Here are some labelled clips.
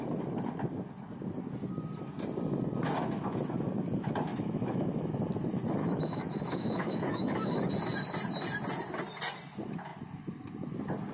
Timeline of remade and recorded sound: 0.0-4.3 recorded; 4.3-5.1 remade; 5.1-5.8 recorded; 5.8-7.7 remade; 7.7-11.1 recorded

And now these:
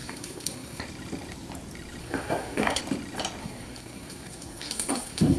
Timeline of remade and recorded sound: 0.0-0.8 remade; 0.8-2.0 recorded; 2.0-2.8 remade; 2.8-3.4 recorded; 3.4-5.4 remade

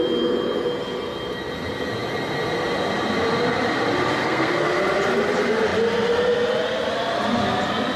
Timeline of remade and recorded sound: 0.0-4.2 recorded; 4.2-4.8 remade; 4.8-8.0 recorded

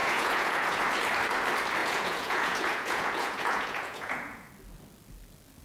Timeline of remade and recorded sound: 0.0-0.8 remade; 0.8-1.8 recorded; 1.8-4.5 remade; 4.5-5.6 recorded

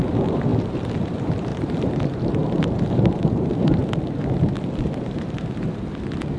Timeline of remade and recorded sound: 0.0-3.8 remade; 3.8-4.8 recorded; 4.8-6.4 remade

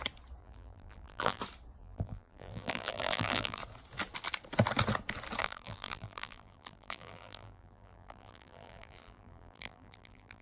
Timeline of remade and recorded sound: 0.0-0.4 recorded; 0.4-1.4 remade; 1.4-1.8 recorded; 1.8-3.6 remade; 3.6-5.4 recorded; 5.4-10.4 remade